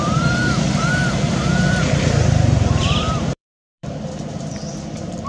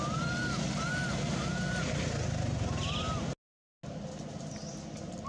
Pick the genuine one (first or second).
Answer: second